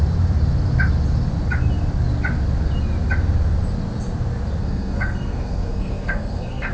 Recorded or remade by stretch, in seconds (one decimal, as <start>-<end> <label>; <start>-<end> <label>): 0.0-4.6 recorded; 4.6-6.7 remade